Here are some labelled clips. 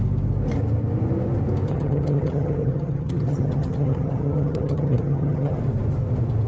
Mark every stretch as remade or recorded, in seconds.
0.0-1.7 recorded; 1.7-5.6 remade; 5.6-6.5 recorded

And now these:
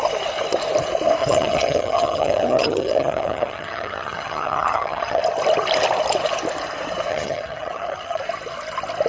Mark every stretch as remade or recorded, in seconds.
0.0-1.2 recorded; 1.2-5.2 remade; 5.2-7.1 recorded; 7.1-8.2 remade; 8.2-9.1 recorded

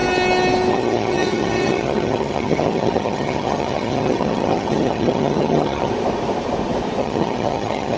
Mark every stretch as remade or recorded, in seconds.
0.0-0.7 recorded; 0.7-5.9 remade; 5.9-7.0 recorded; 7.0-8.0 remade

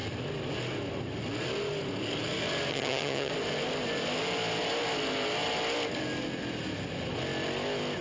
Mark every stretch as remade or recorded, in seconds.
0.0-2.7 recorded; 2.7-3.3 remade; 3.3-8.0 recorded

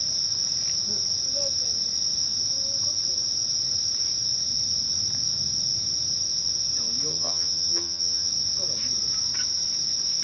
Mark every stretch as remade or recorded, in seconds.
0.0-7.1 recorded; 7.1-8.3 remade; 8.3-10.2 recorded